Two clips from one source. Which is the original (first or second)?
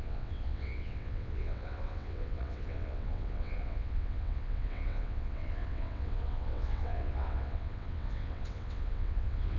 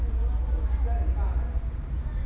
second